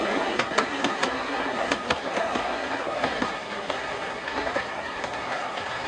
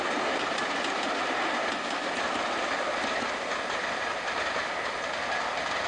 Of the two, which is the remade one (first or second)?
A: first